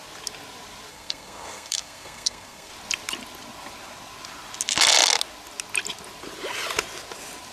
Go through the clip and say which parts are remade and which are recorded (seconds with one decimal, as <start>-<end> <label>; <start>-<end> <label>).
0.0-0.9 recorded; 0.9-2.7 remade; 2.7-7.5 recorded

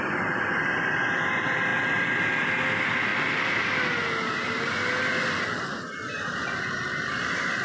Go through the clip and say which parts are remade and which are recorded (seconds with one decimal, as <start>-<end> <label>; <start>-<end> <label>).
0.0-7.6 recorded

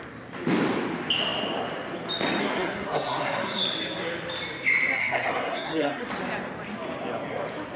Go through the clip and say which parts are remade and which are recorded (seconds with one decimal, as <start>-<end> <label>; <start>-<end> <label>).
0.0-2.4 recorded; 2.4-3.6 remade; 3.6-5.0 recorded; 5.0-6.1 remade; 6.1-7.8 recorded

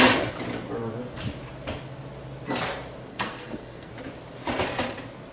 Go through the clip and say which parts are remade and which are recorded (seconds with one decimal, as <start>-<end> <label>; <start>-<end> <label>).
0.0-3.1 recorded; 3.1-3.9 remade; 3.9-5.3 recorded